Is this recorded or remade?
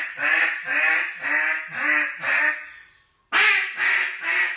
recorded